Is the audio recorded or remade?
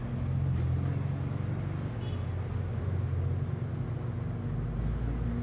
recorded